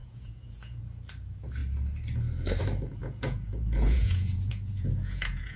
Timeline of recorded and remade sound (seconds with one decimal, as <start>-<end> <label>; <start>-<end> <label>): 0.0-0.8 remade; 0.8-3.0 recorded; 3.0-5.6 remade